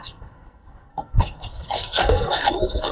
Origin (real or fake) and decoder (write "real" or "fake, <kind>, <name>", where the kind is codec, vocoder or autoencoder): fake, codec, SNAC